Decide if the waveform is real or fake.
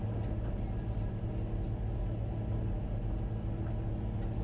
real